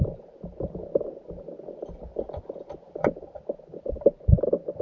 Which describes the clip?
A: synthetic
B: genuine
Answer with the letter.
B